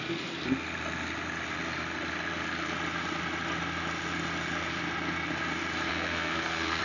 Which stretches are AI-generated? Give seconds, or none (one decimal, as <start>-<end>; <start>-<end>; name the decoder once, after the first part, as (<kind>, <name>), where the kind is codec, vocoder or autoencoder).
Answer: 5.9-6.8 (codec, SNAC)